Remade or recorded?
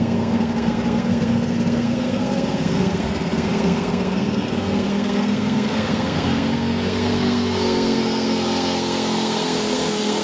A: remade